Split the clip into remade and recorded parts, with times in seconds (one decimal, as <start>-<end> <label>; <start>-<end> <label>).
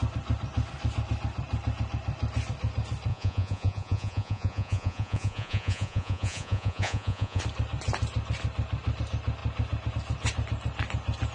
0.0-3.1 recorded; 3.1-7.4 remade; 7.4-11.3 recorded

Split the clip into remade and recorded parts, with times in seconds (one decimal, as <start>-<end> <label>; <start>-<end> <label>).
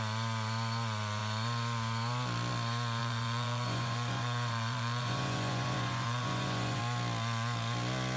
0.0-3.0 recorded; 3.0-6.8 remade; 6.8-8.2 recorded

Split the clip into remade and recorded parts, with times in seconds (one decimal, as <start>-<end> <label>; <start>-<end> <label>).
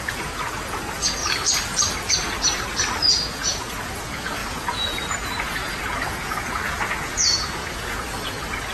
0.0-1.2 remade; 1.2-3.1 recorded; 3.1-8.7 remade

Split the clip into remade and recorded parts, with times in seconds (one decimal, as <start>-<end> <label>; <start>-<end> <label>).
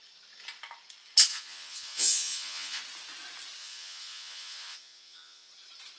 0.0-1.3 recorded; 1.3-2.8 remade; 2.8-3.6 recorded; 3.6-5.5 remade; 5.5-6.0 recorded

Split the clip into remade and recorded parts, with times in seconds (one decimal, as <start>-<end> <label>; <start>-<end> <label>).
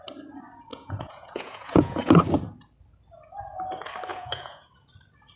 0.0-0.7 recorded; 0.7-2.2 remade; 2.2-4.1 recorded; 4.1-4.9 remade; 4.9-5.4 recorded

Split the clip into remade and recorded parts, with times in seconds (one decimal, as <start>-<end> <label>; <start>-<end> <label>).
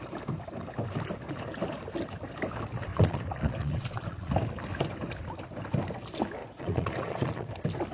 0.0-2.9 recorded; 2.9-4.3 remade; 4.3-6.4 recorded; 6.4-7.5 remade; 7.5-7.9 recorded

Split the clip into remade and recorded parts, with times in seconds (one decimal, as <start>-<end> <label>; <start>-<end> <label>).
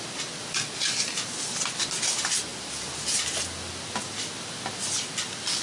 0.0-5.6 recorded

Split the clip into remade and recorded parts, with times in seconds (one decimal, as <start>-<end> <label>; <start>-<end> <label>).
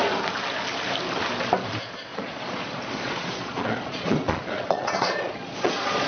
0.0-2.1 recorded; 2.1-6.1 remade